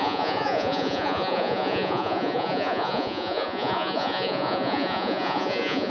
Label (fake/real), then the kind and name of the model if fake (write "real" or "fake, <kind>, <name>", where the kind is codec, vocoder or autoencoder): fake, vocoder, Vocos